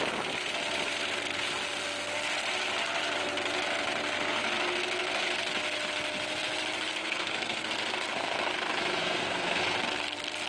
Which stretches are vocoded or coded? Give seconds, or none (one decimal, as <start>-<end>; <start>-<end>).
7.0-7.7; 9.0-9.6